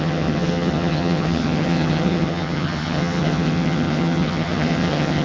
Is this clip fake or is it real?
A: fake